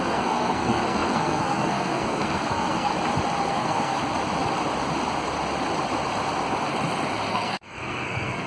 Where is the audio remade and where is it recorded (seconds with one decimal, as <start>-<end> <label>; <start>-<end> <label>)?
0.0-2.9 remade; 2.9-3.5 recorded; 3.5-4.0 remade; 4.0-7.3 recorded; 7.3-8.5 remade